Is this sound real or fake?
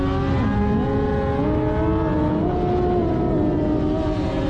real